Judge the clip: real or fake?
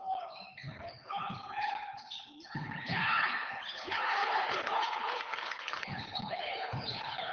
fake